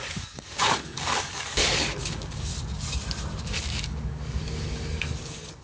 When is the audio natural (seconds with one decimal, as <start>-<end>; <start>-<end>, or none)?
2.5-3.4